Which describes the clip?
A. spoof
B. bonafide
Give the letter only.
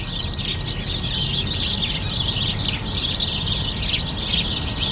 B